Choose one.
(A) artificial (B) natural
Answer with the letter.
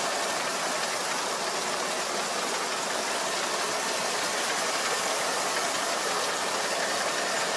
B